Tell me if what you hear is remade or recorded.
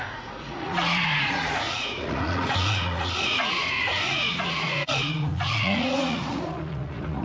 remade